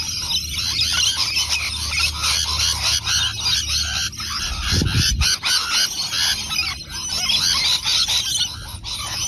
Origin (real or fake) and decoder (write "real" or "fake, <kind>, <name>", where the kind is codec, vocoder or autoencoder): real